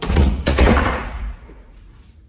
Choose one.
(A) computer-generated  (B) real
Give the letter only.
A